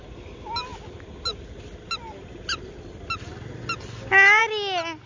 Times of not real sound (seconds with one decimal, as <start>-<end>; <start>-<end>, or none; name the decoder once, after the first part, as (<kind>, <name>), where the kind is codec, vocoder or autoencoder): none